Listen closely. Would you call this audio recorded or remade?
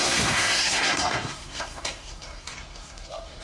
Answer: remade